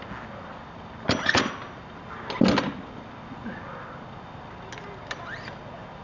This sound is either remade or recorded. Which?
recorded